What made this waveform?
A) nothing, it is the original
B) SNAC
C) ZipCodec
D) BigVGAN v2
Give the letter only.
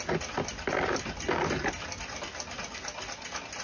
A